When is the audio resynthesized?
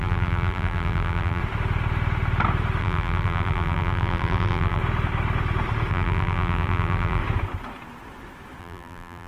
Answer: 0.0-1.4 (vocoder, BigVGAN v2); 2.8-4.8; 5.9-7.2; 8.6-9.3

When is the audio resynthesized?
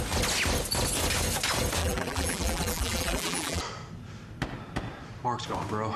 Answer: 1.8-3.6 (vocoder, BigVGAN v2)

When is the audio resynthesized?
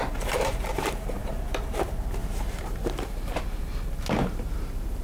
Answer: 0.0-1.3 (vocoder, BigVGAN v2); 2.2-3.6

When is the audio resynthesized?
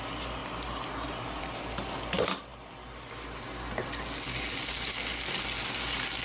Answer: none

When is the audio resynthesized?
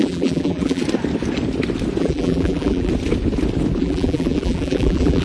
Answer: 0.0-0.8 (vocoder, BigVGAN v2); 2.0-2.9; 3.8-5.2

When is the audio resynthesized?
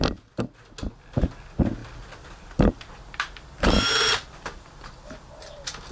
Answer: 1.8-5.3 (vocoder, BigVGAN v2)